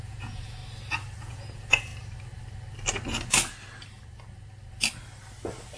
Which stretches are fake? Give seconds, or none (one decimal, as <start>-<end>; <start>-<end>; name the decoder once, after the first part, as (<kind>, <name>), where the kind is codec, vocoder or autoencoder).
0.0-0.6 (vocoder, Vocos); 1.2-1.9